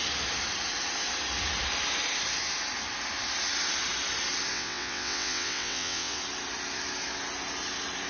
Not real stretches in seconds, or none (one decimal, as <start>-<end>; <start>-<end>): 4.5-6.2